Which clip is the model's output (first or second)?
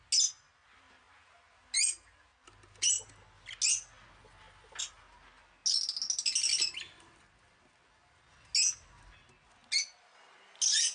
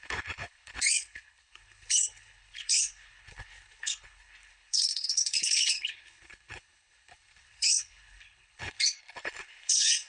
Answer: second